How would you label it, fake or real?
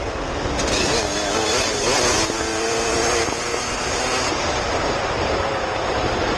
real